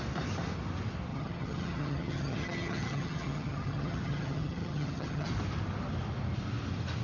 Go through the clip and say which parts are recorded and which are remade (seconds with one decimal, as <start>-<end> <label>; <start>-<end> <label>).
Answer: 0.0-1.1 recorded; 1.1-5.3 remade; 5.3-7.0 recorded